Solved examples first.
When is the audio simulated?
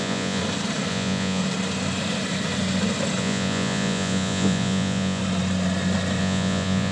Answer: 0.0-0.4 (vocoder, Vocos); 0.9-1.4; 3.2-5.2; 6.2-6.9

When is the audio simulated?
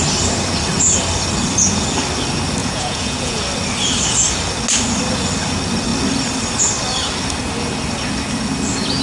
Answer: 2.6-3.4 (vocoder, Vocos)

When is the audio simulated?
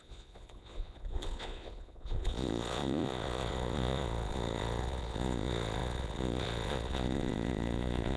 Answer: 0.0-8.2 (vocoder, Vocos)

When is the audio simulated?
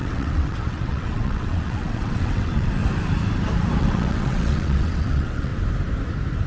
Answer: 0.0-2.8 (vocoder, WaveNeXt); 3.8-5.5